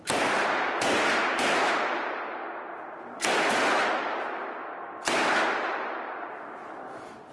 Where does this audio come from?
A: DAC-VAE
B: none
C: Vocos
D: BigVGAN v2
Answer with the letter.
B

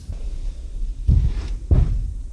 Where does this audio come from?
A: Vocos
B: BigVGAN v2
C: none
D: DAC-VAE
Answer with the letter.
B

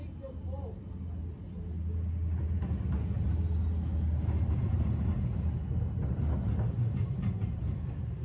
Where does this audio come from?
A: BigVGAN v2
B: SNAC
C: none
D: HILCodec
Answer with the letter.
C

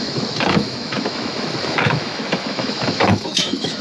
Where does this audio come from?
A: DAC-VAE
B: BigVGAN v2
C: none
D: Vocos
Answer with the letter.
A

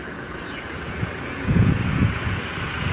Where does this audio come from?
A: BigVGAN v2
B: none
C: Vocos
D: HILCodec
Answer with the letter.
C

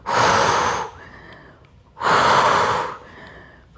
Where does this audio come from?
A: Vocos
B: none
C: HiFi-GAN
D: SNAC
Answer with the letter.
B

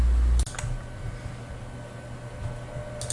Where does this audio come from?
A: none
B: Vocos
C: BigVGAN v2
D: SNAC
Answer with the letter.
A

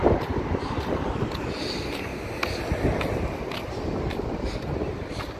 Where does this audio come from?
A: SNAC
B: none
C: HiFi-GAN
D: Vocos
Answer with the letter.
B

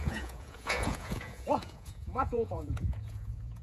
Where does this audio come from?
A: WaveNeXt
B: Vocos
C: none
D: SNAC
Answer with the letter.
B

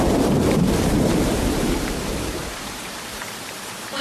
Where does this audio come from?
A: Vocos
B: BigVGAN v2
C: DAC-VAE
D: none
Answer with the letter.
B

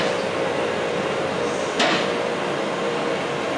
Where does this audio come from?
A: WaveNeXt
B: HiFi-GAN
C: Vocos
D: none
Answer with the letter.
D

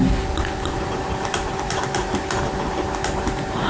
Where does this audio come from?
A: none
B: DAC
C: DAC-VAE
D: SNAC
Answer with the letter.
A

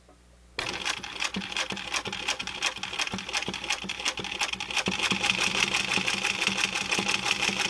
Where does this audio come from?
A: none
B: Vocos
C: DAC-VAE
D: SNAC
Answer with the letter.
A